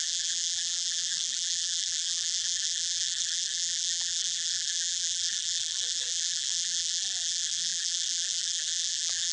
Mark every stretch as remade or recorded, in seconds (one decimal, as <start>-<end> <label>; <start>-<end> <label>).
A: 0.0-9.3 remade